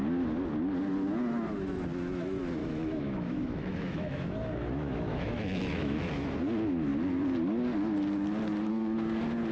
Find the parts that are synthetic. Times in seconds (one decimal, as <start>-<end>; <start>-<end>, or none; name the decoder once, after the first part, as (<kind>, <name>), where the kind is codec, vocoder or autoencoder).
2.6-6.3 (autoencoder, DAC-VAE)